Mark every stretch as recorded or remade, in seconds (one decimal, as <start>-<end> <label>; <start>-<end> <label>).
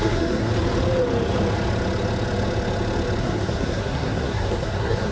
0.0-0.5 remade; 0.5-3.2 recorded; 3.2-5.1 remade